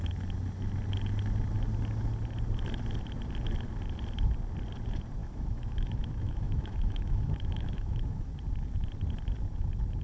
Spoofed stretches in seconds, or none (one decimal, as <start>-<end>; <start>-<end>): 5.2-8.3